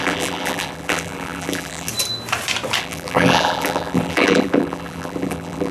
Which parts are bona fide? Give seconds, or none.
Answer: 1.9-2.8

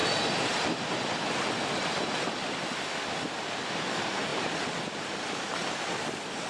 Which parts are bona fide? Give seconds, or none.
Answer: 0.0-6.5